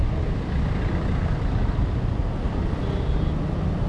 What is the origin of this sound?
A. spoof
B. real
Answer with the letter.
B